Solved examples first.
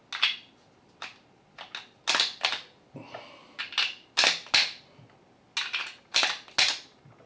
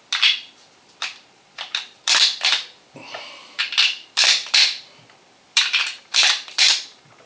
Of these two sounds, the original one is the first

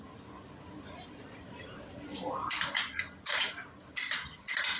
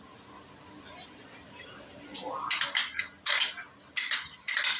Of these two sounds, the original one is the second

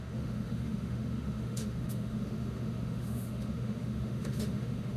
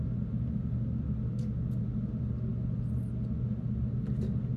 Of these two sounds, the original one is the second